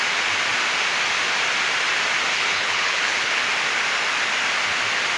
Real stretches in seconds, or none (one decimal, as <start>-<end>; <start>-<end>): 0.0-2.3; 3.4-5.2